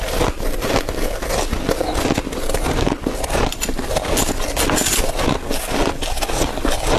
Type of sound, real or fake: real